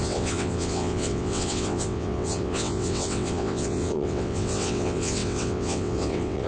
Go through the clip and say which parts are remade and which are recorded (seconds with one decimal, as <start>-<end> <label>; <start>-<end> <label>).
0.0-6.5 remade